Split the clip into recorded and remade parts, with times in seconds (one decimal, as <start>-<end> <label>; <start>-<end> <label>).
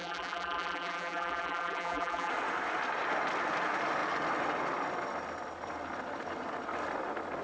0.0-2.3 remade; 2.3-7.4 recorded